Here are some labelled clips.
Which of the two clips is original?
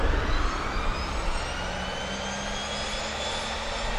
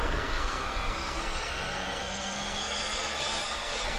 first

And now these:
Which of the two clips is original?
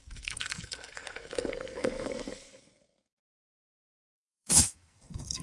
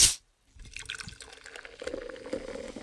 second